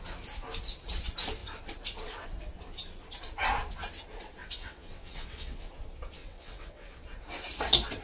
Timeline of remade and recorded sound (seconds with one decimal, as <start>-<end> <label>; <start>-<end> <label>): 0.0-4.4 recorded; 4.4-5.7 remade; 5.7-6.2 recorded; 6.2-6.9 remade; 6.9-8.0 recorded